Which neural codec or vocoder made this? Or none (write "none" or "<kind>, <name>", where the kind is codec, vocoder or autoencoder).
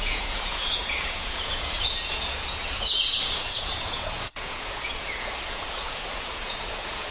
vocoder, Vocos